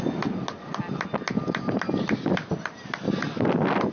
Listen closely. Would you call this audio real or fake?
real